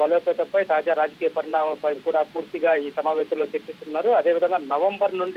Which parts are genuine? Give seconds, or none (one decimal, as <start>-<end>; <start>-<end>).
0.0-1.5; 3.9-5.4